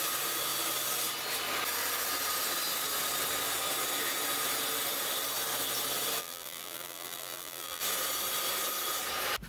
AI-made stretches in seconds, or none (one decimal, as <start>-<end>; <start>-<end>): 6.2-7.8